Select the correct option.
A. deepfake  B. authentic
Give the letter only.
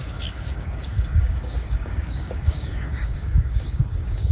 A